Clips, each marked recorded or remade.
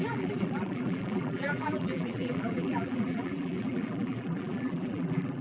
remade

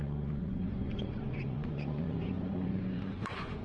remade